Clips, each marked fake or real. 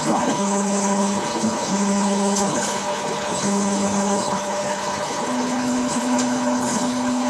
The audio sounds fake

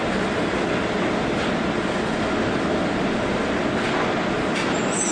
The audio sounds real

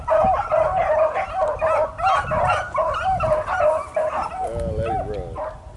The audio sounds real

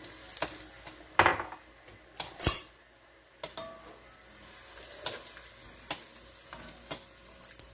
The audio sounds real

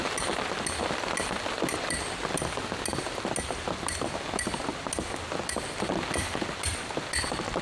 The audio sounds real